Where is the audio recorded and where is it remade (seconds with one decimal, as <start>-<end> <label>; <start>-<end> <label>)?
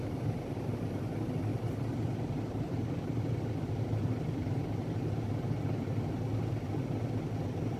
0.0-1.5 recorded; 1.5-3.4 remade; 3.4-4.0 recorded; 4.0-6.1 remade; 6.1-7.8 recorded